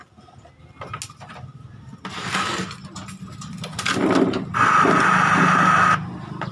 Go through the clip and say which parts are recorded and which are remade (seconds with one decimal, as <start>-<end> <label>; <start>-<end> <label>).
0.0-6.5 recorded